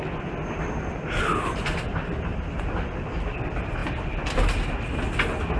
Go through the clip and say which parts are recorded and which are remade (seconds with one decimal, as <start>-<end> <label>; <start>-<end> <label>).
0.0-5.6 recorded

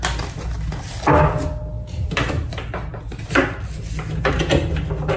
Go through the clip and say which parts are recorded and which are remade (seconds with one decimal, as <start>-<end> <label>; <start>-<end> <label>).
0.0-5.2 recorded

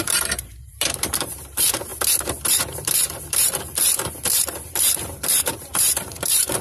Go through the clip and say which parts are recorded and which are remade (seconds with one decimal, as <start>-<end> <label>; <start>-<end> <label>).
0.0-6.6 remade

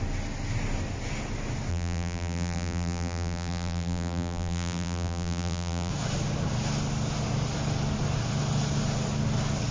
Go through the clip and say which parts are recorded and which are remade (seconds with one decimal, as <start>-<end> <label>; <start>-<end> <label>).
0.0-1.7 recorded; 1.7-5.9 remade; 5.9-9.7 recorded

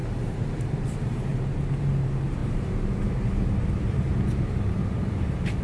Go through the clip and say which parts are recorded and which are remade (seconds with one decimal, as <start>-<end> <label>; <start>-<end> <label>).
0.0-1.3 remade; 1.3-1.9 recorded; 1.9-5.6 remade

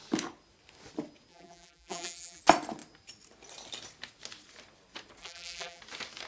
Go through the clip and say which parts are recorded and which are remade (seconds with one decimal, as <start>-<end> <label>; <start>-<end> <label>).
0.0-1.3 recorded; 1.3-2.4 remade; 2.4-5.2 recorded; 5.2-5.8 remade; 5.8-6.3 recorded

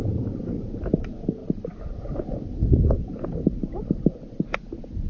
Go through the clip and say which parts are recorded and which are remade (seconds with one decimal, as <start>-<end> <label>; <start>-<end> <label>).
0.0-5.1 recorded